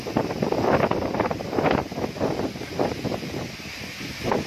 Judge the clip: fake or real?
real